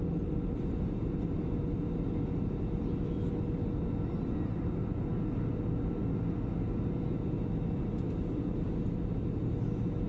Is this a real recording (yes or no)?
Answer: yes